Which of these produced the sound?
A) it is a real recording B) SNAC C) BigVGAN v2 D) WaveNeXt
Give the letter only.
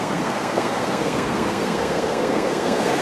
B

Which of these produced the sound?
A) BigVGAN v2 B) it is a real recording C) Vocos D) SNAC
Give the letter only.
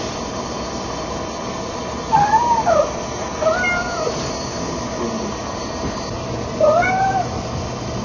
A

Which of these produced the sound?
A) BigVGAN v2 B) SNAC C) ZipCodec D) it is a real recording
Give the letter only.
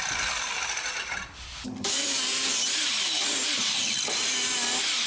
A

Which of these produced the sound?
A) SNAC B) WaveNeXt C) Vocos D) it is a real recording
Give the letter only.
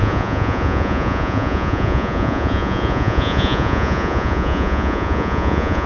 C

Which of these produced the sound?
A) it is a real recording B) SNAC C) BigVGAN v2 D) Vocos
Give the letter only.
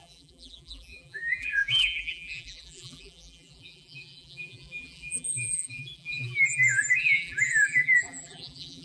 C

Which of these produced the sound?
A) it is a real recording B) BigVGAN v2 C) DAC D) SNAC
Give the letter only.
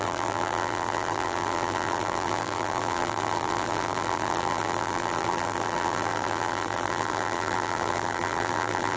B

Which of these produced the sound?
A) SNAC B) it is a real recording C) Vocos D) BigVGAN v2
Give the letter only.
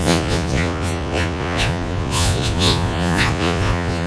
C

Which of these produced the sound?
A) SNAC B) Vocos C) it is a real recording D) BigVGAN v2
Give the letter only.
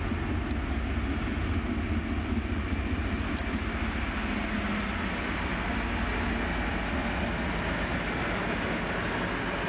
C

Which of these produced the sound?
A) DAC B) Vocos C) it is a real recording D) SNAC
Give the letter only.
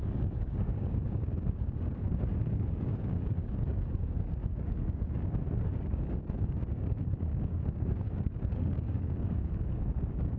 A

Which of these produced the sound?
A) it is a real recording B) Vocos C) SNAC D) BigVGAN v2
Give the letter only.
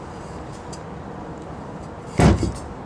A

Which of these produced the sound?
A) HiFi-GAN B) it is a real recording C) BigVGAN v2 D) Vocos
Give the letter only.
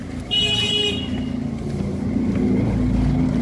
B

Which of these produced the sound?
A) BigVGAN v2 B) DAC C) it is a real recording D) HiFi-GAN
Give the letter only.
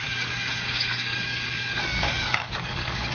B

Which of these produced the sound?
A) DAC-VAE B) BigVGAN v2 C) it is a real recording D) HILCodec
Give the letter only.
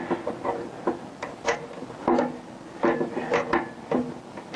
C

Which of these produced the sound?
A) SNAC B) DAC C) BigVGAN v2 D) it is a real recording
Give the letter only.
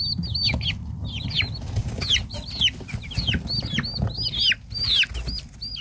D